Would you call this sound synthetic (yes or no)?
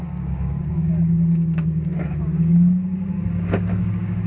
yes